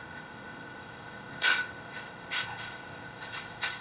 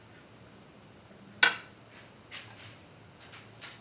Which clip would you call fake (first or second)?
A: first